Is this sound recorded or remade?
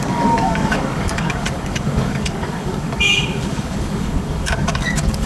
remade